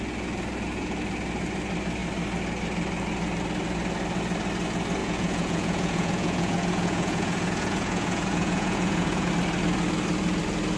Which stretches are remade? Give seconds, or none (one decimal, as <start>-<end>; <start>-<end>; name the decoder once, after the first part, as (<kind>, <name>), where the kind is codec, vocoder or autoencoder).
5.0-9.3 (vocoder, Vocos)